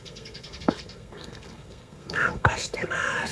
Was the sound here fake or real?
fake